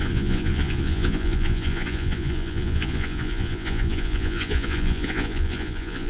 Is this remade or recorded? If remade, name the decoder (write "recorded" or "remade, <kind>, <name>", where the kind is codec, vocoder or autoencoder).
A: remade, vocoder, Vocos